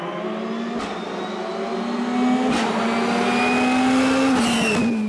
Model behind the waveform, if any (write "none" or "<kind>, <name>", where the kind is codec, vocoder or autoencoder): none